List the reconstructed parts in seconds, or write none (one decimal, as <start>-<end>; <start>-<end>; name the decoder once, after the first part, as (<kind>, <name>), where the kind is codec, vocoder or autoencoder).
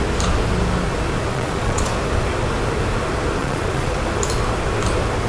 1.3-1.9 (vocoder, Vocos); 3.4-4.0